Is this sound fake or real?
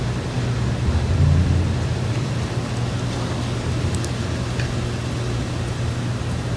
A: real